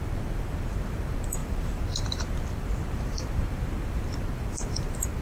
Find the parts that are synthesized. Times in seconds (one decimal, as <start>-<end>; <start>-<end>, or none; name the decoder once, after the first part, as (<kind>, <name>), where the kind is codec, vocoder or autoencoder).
0.0-5.2 (vocoder, BigVGAN v2)